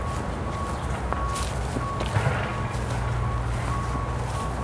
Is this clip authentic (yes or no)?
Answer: yes